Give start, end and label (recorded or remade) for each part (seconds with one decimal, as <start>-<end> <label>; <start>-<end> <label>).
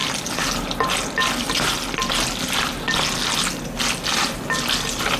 0.0-5.2 recorded